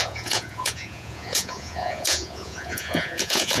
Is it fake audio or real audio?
fake